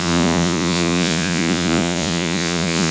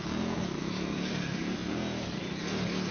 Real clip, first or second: second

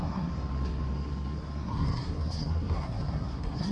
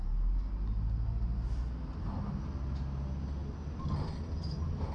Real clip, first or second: second